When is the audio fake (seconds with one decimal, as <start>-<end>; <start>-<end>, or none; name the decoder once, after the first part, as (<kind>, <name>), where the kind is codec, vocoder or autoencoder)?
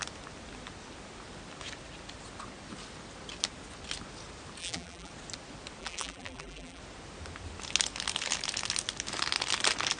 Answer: 4.6-5.1 (vocoder, BigVGAN v2); 5.8-6.8